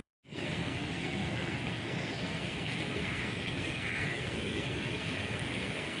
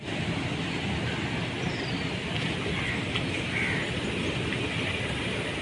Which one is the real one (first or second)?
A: second